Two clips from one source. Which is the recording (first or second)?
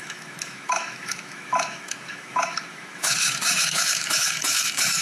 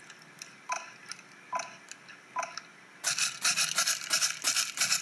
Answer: second